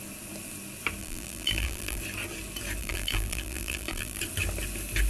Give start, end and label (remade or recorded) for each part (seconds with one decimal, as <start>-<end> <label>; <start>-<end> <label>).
0.0-1.0 recorded; 1.0-2.0 remade; 2.0-2.8 recorded; 2.8-4.2 remade; 4.2-5.1 recorded